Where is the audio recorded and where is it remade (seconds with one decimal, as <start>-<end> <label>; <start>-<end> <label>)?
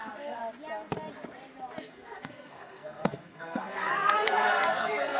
0.0-0.4 remade; 0.4-1.8 recorded; 1.8-5.2 remade